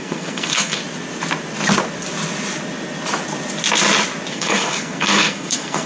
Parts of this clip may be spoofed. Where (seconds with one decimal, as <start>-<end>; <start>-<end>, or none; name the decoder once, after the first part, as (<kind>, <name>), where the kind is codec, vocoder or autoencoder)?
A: 0.0-0.8 (codec, SNAC); 4.3-5.9